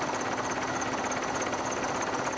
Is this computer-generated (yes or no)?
no